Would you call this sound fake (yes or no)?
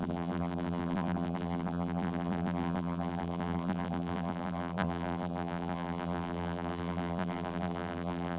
yes